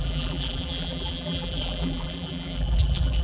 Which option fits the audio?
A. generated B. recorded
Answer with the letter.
A